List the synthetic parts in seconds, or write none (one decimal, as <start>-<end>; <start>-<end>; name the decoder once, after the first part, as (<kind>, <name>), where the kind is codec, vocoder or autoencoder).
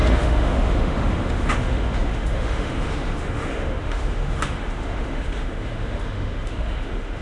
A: 0.0-7.2 (autoencoder, DAC-VAE)